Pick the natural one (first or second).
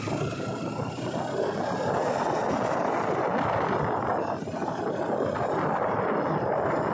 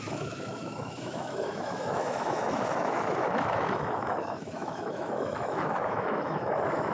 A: first